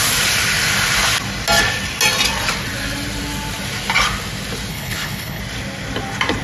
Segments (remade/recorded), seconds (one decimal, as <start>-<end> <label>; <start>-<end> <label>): 0.0-4.7 recorded; 4.7-5.4 remade; 5.4-6.4 recorded